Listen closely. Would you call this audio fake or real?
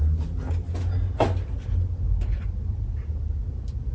real